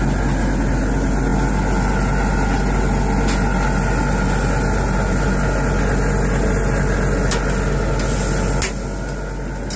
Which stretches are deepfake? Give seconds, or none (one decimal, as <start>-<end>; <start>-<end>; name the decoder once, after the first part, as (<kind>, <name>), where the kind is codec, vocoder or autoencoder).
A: none